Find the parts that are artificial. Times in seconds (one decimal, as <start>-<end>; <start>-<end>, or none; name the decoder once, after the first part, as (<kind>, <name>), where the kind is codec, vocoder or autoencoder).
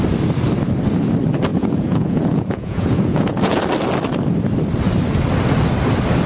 1.5-3.6 (vocoder, Vocos)